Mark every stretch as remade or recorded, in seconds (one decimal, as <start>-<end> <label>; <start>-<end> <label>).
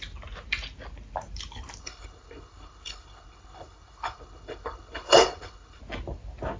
0.0-1.8 recorded; 1.8-5.8 remade; 5.8-6.6 recorded